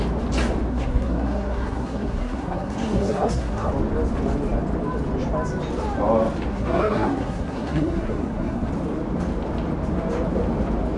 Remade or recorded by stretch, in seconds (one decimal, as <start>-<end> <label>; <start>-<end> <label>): 0.0-0.7 recorded; 0.7-3.7 remade; 3.7-6.5 recorded; 6.5-8.7 remade; 8.7-11.0 recorded